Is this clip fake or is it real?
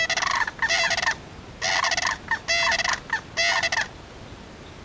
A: real